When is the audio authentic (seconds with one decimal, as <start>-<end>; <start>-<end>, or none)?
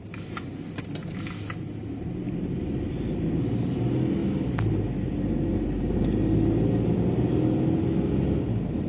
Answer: 0.0-8.9